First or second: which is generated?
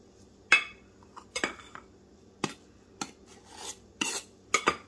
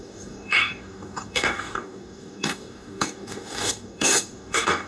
second